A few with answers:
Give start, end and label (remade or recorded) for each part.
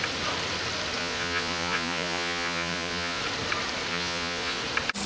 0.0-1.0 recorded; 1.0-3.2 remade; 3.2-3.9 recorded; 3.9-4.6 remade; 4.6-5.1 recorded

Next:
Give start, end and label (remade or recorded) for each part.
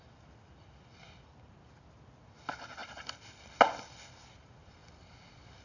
0.0-5.6 recorded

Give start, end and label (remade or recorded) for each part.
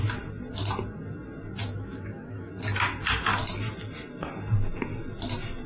0.0-1.6 recorded; 1.6-2.5 remade; 2.5-5.7 recorded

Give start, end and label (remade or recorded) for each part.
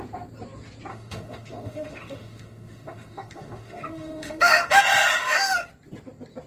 0.0-0.9 recorded; 0.9-4.8 remade; 4.8-5.2 recorded; 5.2-5.7 remade; 5.7-6.5 recorded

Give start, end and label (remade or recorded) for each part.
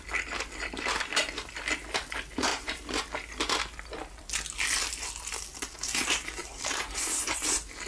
0.0-2.5 recorded; 2.5-3.0 remade; 3.0-6.4 recorded; 6.4-7.2 remade; 7.2-7.9 recorded